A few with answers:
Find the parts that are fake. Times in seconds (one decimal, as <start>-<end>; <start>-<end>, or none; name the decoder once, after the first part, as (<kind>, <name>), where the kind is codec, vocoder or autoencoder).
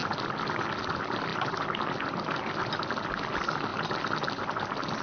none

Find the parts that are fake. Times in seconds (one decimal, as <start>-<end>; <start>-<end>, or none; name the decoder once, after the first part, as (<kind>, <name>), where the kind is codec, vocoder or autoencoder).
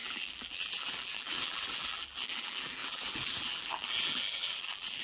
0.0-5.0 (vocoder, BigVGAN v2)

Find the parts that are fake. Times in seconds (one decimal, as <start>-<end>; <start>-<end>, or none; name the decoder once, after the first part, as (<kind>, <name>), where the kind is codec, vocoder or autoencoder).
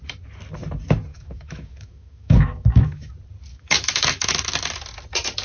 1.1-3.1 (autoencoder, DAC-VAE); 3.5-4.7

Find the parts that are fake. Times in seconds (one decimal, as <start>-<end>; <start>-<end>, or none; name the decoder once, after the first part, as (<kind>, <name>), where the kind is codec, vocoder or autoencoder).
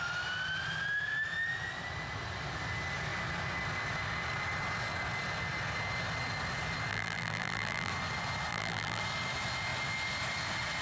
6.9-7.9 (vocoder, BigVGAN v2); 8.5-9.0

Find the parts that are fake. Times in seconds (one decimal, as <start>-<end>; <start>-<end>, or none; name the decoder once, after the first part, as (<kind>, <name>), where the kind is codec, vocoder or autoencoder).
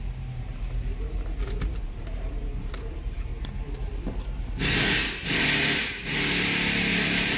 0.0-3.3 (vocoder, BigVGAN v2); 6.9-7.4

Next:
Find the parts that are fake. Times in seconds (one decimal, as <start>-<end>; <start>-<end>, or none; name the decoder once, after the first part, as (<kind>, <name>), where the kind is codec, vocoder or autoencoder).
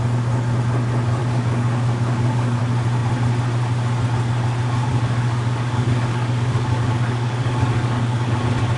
1.2-2.6 (codec, DAC); 4.9-8.4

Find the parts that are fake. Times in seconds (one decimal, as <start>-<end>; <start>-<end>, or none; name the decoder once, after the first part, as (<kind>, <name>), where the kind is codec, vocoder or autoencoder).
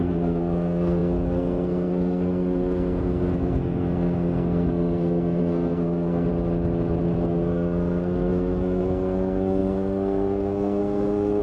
0.0-6.3 (codec, SNAC); 7.0-11.4